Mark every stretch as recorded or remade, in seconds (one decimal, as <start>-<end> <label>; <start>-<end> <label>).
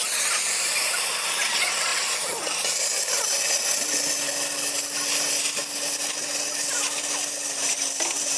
0.0-8.4 recorded